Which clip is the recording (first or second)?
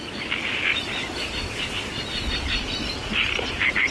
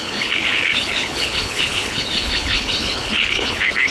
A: first